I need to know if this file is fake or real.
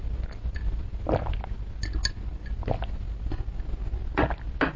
real